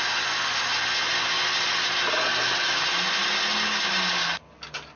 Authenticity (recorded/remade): recorded